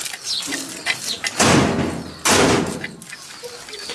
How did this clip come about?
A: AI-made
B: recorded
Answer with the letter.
B